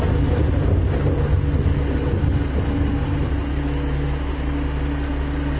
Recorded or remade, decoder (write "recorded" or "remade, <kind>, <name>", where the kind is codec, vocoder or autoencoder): recorded